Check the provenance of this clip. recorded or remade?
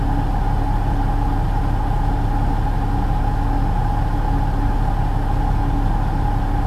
recorded